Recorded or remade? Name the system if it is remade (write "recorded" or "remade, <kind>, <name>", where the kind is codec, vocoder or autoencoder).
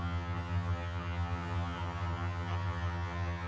remade, vocoder, HiFi-GAN